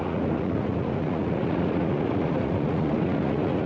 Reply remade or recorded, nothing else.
remade